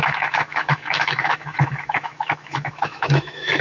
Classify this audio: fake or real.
fake